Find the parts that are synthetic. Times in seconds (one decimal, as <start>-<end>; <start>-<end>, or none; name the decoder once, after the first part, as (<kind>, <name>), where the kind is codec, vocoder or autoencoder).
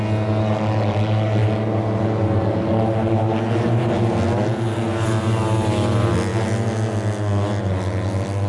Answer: none